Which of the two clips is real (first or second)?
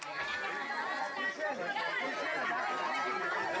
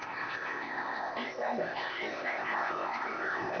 first